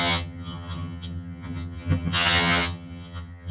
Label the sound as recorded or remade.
remade